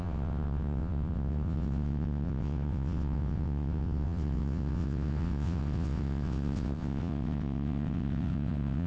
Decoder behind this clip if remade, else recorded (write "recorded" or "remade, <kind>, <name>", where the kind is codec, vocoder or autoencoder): remade, vocoder, WaveNeXt